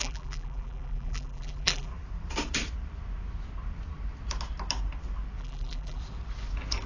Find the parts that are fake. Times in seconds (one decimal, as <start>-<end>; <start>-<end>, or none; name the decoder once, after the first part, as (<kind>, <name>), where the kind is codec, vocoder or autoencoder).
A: 0.0-1.9 (vocoder, BigVGAN v2); 5.4-6.0